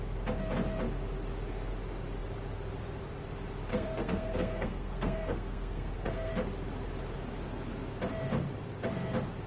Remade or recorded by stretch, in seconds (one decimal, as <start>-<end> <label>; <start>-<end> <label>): 0.0-3.7 recorded; 3.7-6.3 remade; 6.3-9.5 recorded